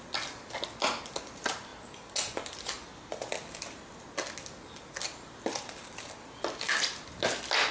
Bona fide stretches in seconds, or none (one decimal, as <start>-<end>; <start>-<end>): 0.0-7.7